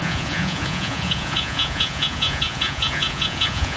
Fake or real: fake